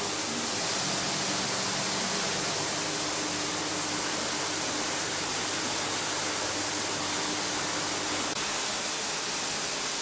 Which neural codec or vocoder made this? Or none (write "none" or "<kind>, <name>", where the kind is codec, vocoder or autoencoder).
none